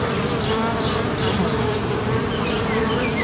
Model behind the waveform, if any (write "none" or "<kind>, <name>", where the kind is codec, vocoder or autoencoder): none